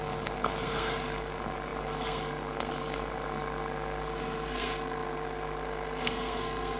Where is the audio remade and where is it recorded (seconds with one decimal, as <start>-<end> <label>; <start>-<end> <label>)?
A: 0.0-6.8 remade